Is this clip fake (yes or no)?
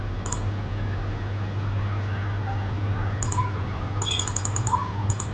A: no